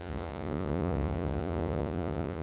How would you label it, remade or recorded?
remade